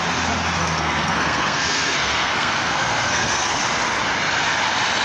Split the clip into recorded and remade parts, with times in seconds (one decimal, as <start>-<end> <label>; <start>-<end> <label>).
0.0-0.6 recorded; 0.6-3.6 remade; 3.6-5.0 recorded